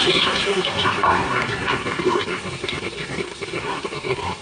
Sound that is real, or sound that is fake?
fake